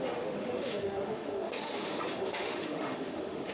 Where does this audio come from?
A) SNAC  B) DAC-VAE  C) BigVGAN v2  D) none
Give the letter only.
B